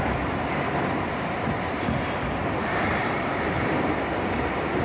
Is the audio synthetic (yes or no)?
yes